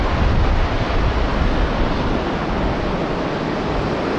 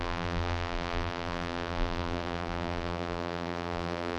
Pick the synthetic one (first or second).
second